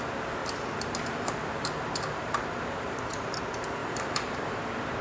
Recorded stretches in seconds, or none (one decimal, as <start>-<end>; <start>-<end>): 0.0-0.4; 3.4-3.8; 4.6-5.0